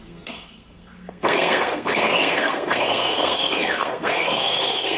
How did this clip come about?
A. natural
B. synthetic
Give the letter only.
B